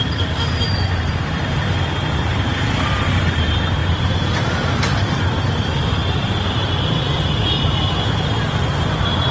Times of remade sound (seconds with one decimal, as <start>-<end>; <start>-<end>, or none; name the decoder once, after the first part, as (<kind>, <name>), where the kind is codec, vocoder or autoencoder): 3.8-5.1 (vocoder, BigVGAN v2); 6.0-6.7